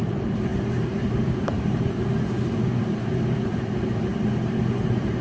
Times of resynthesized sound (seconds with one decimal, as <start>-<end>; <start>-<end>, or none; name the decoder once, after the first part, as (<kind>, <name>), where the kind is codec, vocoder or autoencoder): 0.0-2.1 (vocoder, BigVGAN v2); 2.8-4.1; 4.7-5.2